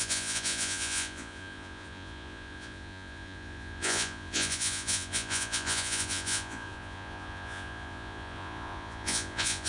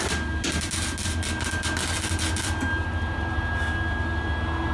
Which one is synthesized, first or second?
first